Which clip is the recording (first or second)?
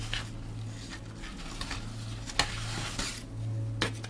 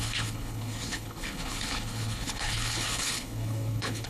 first